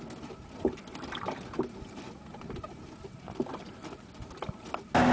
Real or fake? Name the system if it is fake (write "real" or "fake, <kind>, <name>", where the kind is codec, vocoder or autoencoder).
real